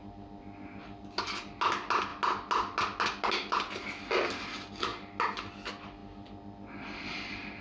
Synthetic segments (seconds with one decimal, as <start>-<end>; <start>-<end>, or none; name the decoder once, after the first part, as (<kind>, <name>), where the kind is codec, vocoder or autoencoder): none